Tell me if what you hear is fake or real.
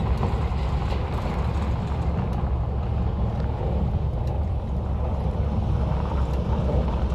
real